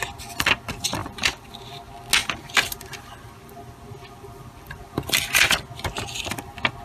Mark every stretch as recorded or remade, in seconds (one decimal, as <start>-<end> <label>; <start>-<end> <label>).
0.0-1.0 recorded; 1.0-1.6 remade; 1.6-2.2 recorded; 2.2-5.5 remade; 5.5-6.8 recorded